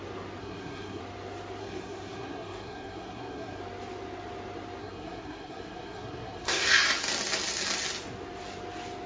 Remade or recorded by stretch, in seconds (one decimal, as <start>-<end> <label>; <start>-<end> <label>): 0.0-0.4 recorded; 0.4-1.0 remade; 1.0-1.6 recorded; 1.6-3.6 remade; 3.6-4.8 recorded; 4.8-6.7 remade; 6.7-9.1 recorded